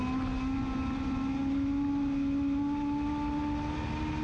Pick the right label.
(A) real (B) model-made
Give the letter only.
A